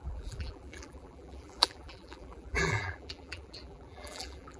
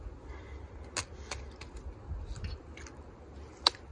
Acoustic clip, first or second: second